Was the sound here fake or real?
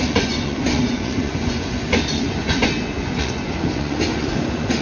fake